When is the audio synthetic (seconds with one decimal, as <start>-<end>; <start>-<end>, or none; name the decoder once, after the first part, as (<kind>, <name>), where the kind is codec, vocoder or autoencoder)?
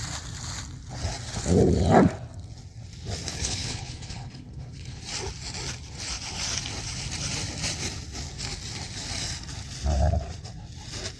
3.3-5.0 (codec, HILCodec)